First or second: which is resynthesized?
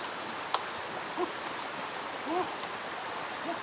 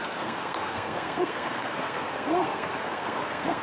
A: second